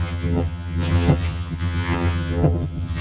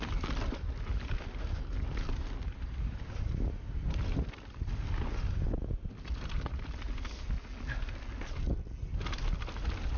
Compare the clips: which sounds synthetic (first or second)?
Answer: first